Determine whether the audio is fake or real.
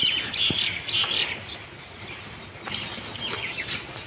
real